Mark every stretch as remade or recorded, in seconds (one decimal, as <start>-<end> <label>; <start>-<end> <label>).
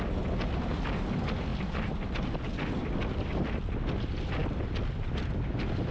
0.0-5.9 recorded